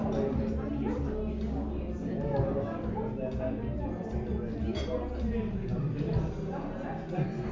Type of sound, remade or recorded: recorded